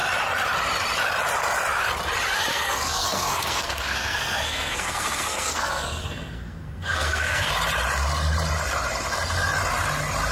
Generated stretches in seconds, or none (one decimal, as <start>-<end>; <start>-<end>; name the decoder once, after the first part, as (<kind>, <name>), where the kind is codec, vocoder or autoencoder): 2.5-7.5 (codec, SNAC)